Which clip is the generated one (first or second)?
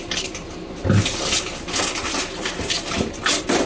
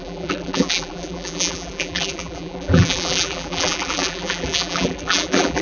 second